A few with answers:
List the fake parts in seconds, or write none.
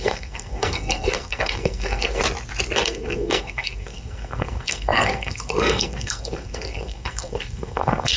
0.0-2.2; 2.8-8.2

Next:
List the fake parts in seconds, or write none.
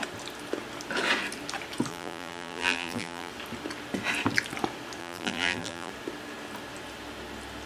1.9-3.3; 5.0-5.9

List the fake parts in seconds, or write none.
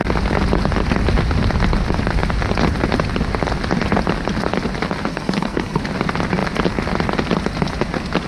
5.1-5.8